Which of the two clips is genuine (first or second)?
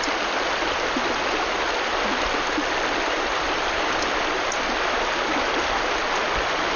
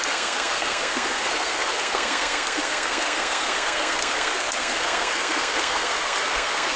first